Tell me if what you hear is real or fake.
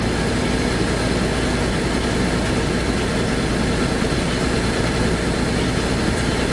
real